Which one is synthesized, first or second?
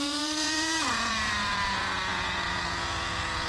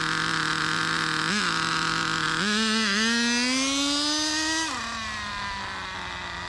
first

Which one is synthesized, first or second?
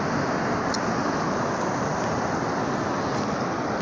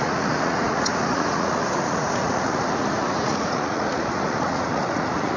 second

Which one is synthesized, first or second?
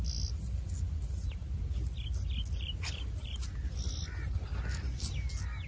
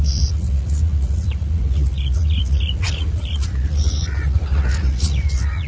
second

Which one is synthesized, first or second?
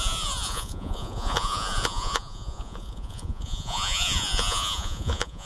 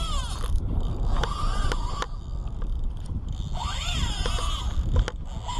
first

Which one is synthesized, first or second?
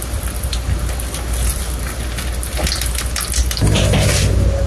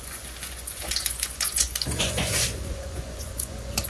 second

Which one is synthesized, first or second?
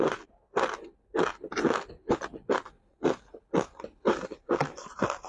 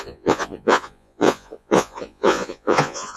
second